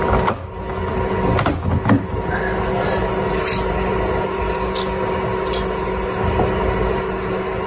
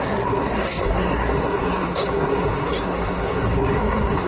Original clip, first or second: first